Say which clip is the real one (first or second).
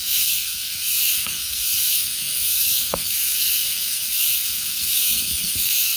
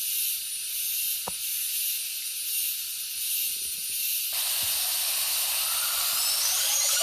second